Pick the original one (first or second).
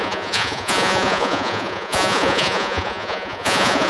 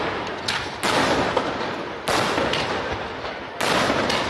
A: second